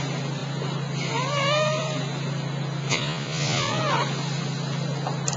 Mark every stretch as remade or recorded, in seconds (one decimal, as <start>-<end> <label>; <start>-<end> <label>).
0.0-2.9 recorded; 2.9-3.8 remade; 3.8-5.4 recorded

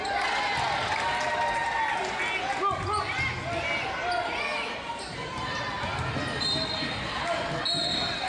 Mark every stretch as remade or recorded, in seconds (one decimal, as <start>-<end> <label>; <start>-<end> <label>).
0.0-8.3 recorded

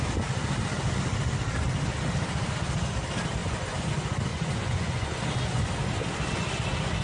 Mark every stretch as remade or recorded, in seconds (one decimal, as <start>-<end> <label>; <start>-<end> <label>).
0.0-3.4 recorded; 3.4-3.9 remade; 3.9-4.3 recorded; 4.3-5.7 remade; 5.7-7.0 recorded

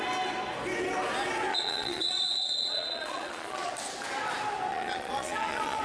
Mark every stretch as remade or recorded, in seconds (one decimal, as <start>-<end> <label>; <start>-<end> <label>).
0.0-1.5 recorded; 1.5-3.7 remade; 3.7-4.7 recorded; 4.7-5.8 remade

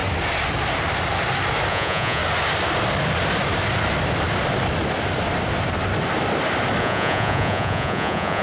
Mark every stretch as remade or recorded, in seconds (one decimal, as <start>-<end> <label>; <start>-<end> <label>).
0.0-1.7 recorded; 1.7-2.2 remade; 2.2-6.8 recorded; 6.8-8.4 remade